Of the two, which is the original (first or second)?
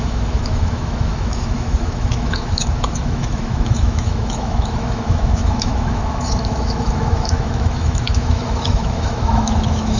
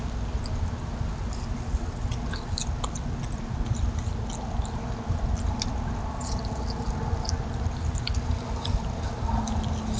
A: second